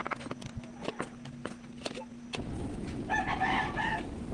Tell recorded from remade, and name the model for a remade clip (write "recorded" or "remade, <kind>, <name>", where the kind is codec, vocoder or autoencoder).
recorded